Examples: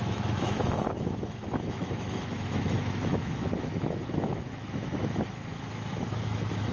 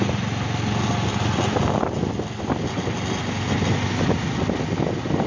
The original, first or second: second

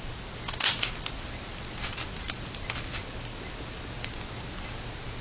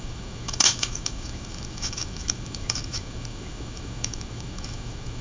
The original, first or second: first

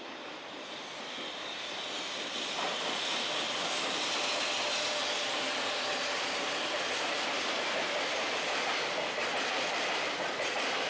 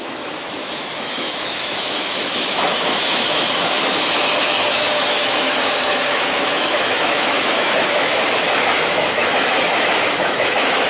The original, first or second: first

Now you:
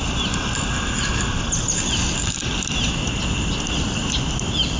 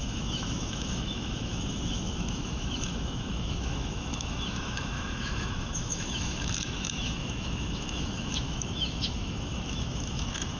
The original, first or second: first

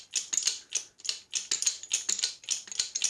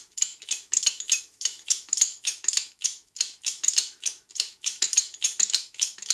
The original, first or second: first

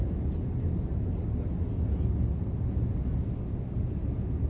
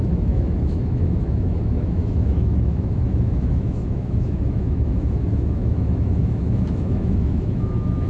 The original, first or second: first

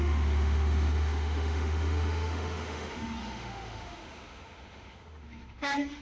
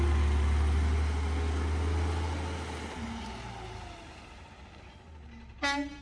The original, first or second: second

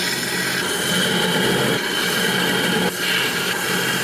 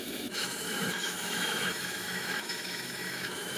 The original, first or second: first